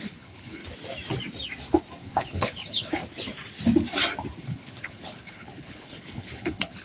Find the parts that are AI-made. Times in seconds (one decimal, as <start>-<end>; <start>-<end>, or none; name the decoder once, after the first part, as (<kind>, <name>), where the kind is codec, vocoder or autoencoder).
0.0-0.6 (codec, HILCodec); 2.0-3.0; 4.4-6.8